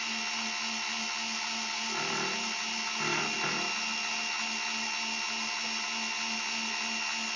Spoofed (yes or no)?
no